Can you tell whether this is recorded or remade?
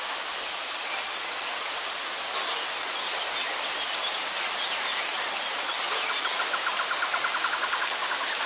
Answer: recorded